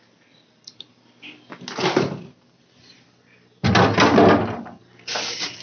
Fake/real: real